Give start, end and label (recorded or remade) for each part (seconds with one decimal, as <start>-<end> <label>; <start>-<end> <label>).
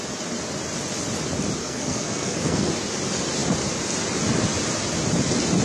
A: 0.0-1.6 recorded; 1.6-2.7 remade; 2.7-5.6 recorded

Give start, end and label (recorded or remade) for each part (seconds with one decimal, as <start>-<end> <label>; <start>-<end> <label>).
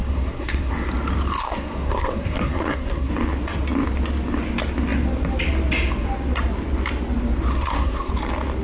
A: 0.0-0.7 remade; 0.7-1.4 recorded; 1.4-3.1 remade; 3.1-7.5 recorded; 7.5-8.1 remade; 8.1-8.6 recorded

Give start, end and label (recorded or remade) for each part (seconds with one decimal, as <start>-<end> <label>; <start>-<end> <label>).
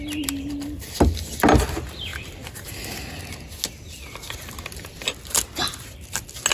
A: 0.0-6.5 recorded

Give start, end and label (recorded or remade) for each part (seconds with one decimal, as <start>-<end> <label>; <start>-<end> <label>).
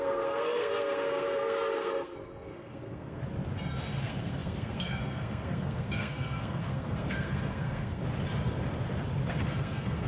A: 0.0-3.2 remade; 3.2-4.0 recorded; 4.0-8.0 remade; 8.0-9.3 recorded; 9.3-10.1 remade